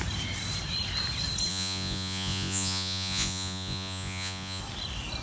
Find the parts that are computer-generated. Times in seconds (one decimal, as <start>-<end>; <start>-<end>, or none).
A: 1.5-4.6